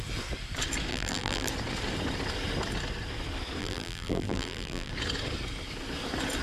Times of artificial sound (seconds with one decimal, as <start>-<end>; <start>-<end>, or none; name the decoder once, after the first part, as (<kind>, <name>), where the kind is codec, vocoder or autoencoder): 0.9-1.5 (vocoder, BigVGAN v2); 3.6-4.9